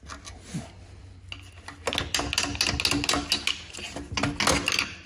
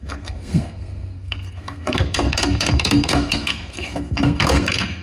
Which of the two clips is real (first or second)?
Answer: first